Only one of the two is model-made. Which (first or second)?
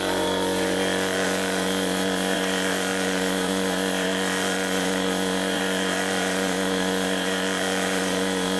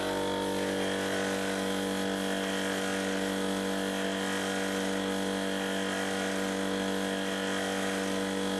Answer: first